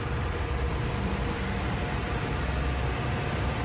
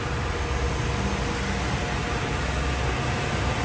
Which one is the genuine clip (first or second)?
second